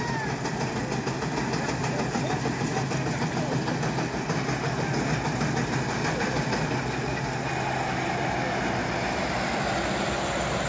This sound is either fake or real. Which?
real